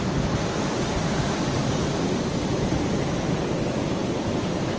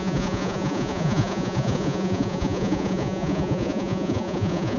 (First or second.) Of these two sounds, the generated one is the second